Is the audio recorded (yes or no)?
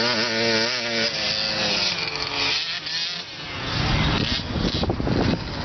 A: yes